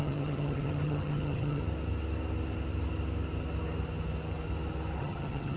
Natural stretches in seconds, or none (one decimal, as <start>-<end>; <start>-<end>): 1.6-5.0